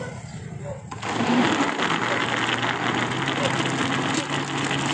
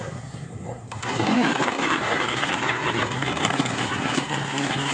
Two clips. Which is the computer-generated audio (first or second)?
second